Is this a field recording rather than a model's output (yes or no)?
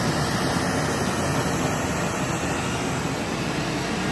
yes